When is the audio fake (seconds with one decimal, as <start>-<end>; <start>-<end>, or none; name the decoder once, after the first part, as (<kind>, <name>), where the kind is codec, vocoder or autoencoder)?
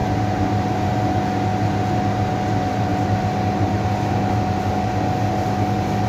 none